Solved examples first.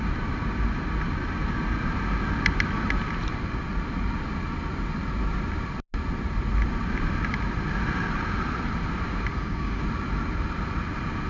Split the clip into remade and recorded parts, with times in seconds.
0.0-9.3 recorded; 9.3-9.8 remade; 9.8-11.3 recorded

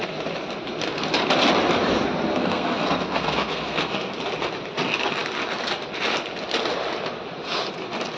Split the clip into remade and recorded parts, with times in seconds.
0.0-2.3 recorded; 2.3-4.1 remade; 4.1-8.2 recorded

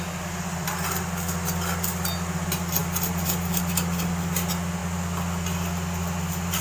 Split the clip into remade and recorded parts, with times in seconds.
0.0-6.6 recorded

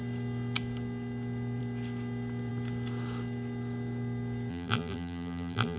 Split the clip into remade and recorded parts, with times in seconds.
0.0-4.5 recorded; 4.5-5.8 remade

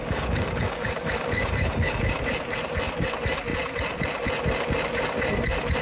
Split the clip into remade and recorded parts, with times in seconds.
0.0-2.0 remade; 2.0-5.8 recorded

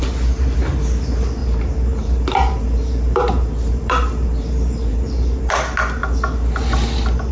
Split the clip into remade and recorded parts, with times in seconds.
0.0-1.4 recorded; 1.4-5.4 remade; 5.4-7.3 recorded